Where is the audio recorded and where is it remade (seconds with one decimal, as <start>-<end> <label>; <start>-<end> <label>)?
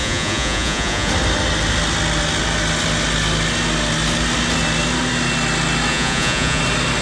0.0-1.1 remade; 1.1-5.9 recorded; 5.9-6.6 remade; 6.6-7.0 recorded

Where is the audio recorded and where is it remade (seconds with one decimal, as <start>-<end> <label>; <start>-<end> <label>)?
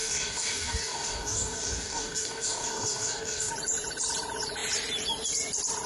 0.0-3.5 remade; 3.5-5.9 recorded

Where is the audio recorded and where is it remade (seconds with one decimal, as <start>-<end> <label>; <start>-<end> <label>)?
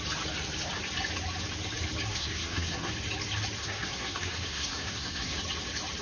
0.0-2.1 recorded; 2.1-2.9 remade; 2.9-3.6 recorded; 3.6-5.4 remade; 5.4-6.0 recorded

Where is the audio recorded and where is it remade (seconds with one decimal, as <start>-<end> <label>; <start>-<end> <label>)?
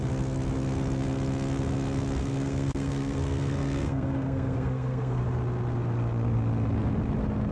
0.0-2.2 recorded; 2.2-5.2 remade; 5.2-7.5 recorded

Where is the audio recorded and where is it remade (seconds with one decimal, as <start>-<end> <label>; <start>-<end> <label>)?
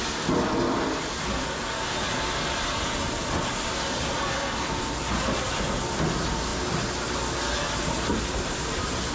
0.0-9.1 recorded